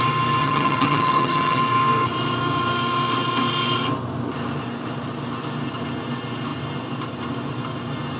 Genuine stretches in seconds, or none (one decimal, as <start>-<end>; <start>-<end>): 0.0-0.4; 1.6-8.2